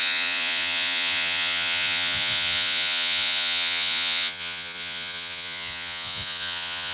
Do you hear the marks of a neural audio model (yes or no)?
yes